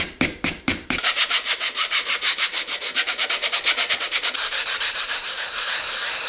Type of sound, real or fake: fake